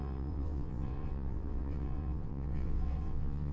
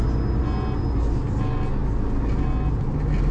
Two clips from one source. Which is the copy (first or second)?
first